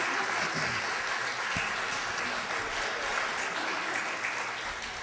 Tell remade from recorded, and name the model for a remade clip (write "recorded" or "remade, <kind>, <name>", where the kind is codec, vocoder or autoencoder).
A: recorded